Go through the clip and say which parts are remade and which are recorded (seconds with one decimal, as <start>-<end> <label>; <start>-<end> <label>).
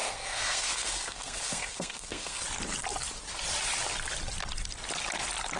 0.0-2.4 remade; 2.4-5.6 recorded